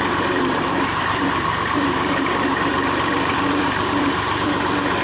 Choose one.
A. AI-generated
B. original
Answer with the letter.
A